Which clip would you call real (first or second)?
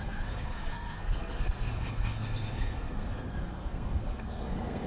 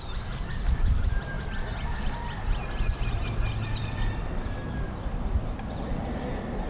second